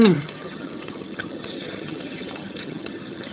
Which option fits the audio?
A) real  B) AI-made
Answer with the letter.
B